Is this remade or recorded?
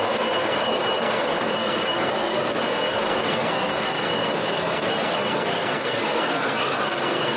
remade